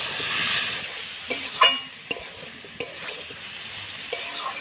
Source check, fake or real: real